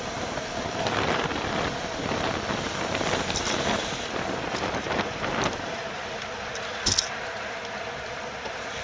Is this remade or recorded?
remade